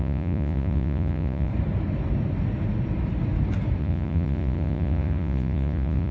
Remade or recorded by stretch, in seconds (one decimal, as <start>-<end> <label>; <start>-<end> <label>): 0.0-1.5 remade; 1.5-3.8 recorded; 3.8-6.1 remade